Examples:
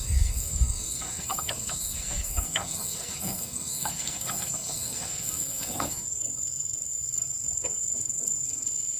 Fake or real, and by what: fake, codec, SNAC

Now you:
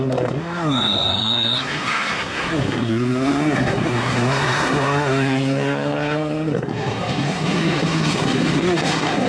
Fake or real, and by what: fake, codec, SNAC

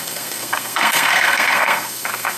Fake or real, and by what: fake, codec, SNAC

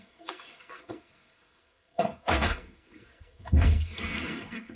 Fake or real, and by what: fake, codec, SNAC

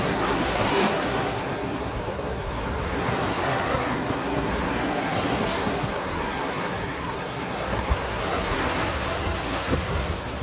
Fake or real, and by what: fake, codec, SNAC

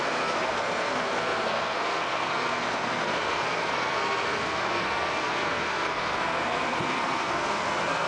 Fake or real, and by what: fake, codec, SNAC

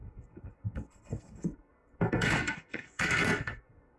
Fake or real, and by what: fake, codec, SNAC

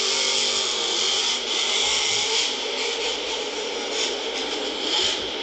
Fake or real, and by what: real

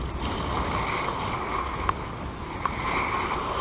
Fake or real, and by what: real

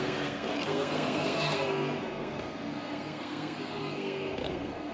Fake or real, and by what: fake, codec, SNAC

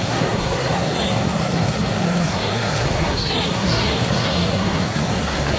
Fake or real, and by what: fake, codec, SNAC